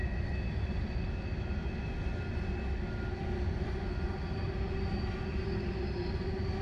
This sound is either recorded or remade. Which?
recorded